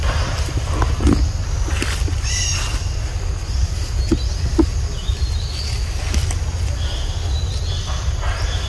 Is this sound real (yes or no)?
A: yes